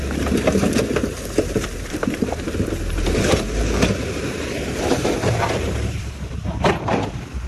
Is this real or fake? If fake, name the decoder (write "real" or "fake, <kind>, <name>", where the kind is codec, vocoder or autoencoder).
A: fake, vocoder, BigVGAN v2